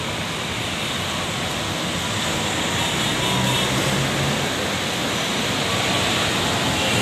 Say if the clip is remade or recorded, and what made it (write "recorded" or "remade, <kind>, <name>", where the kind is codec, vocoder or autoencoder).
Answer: recorded